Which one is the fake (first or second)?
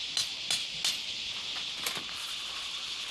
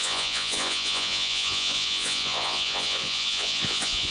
second